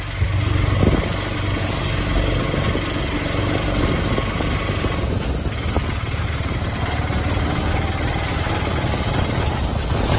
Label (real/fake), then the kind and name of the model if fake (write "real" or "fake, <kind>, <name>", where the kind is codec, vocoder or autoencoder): real